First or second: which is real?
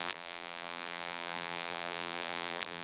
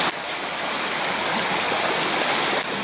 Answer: second